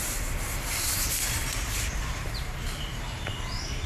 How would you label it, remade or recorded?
remade